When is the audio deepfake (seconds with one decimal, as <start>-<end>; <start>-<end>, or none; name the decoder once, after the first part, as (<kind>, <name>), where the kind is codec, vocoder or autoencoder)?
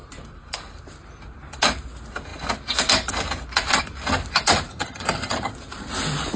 4.7-5.5 (vocoder, HiFi-GAN)